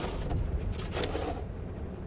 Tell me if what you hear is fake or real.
real